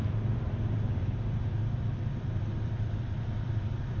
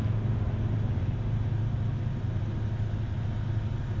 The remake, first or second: first